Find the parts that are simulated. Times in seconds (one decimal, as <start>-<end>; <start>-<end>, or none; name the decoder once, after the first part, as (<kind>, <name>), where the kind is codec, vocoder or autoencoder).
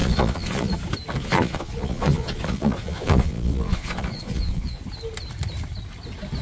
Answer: 0.0-0.7 (vocoder, Vocos); 1.2-4.8